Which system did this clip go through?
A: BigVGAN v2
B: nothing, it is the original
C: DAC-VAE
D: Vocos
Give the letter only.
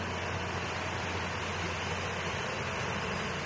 B